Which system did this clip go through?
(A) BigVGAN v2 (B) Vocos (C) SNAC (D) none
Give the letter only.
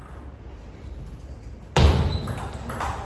D